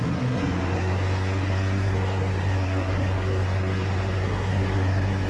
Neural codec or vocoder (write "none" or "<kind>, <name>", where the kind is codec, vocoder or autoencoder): codec, SNAC